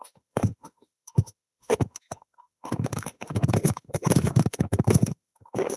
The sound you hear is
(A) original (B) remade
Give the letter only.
B